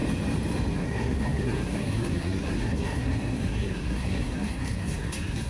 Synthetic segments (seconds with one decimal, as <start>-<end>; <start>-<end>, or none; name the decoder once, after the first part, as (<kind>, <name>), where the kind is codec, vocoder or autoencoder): 0.7-5.5 (codec, SNAC)